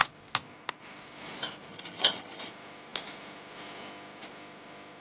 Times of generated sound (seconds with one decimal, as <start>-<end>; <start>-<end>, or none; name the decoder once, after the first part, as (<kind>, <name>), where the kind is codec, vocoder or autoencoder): 1.7-2.5 (vocoder, HiFi-GAN)